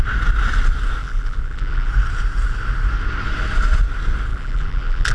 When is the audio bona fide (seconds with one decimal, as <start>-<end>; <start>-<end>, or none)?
0.0-1.0; 1.9-4.3